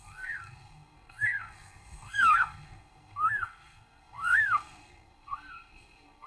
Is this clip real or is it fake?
fake